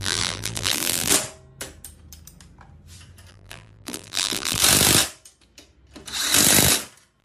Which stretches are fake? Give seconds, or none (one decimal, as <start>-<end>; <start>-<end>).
0.0-1.1; 3.3-4.6

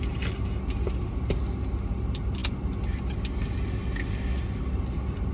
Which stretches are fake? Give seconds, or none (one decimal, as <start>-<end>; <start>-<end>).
none

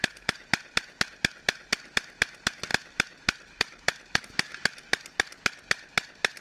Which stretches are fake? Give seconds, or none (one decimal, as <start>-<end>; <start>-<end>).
2.7-4.2

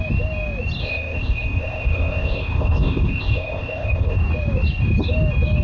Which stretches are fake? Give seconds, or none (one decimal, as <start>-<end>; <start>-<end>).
0.8-4.2

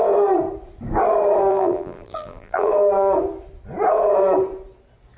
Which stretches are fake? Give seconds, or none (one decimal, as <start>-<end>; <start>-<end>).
1.5-2.7

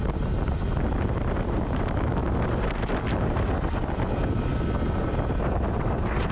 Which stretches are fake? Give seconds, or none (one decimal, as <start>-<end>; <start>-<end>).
none

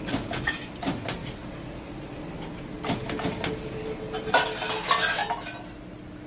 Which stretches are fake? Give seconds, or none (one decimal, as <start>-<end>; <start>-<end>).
none

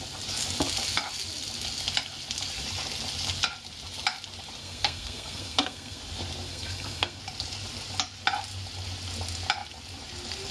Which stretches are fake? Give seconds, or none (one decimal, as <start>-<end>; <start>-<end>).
4.6-6.0; 6.5-7.2